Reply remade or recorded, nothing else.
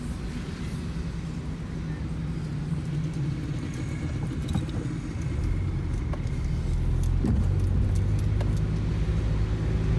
recorded